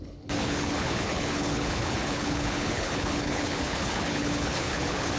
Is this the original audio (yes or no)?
no